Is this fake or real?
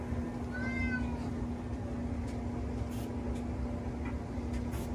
real